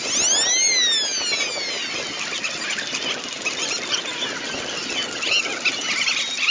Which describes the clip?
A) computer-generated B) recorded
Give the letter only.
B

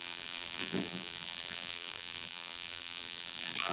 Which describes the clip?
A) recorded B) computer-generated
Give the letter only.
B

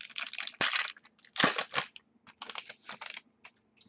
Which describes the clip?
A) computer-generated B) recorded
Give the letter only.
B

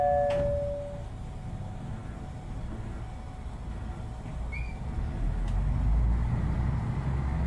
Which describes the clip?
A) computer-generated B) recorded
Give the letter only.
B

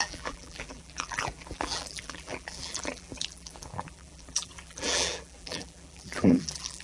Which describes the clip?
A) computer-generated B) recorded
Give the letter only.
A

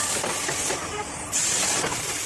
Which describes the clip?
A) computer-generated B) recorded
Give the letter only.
B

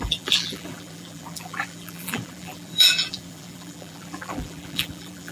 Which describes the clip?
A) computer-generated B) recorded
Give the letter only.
A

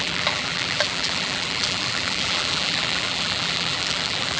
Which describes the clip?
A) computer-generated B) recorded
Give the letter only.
A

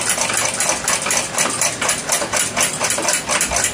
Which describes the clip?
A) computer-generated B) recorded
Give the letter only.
B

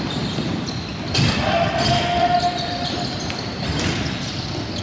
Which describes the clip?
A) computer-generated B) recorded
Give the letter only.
A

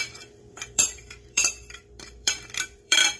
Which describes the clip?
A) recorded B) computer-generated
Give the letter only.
B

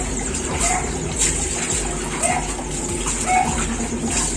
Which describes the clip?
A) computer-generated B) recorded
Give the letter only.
B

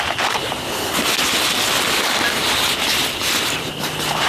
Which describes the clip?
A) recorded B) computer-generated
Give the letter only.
B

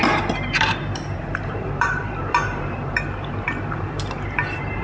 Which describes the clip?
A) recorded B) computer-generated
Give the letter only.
B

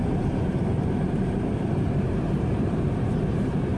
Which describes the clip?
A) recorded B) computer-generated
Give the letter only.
B